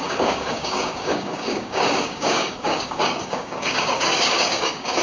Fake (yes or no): yes